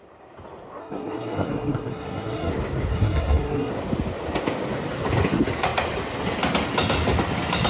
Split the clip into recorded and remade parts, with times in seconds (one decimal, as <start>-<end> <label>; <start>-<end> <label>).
0.0-0.8 recorded; 0.8-2.5 remade; 2.5-2.9 recorded; 2.9-3.7 remade; 3.7-7.7 recorded

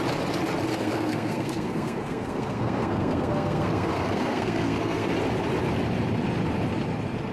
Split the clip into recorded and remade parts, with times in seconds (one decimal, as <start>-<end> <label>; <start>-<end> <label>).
0.0-0.7 recorded; 0.7-5.1 remade; 5.1-7.3 recorded